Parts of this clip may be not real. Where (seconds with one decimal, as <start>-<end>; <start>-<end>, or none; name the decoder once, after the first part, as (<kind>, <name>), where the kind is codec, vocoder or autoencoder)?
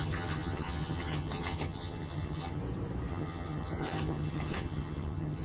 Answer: 0.0-2.6 (vocoder, HiFi-GAN); 3.1-5.4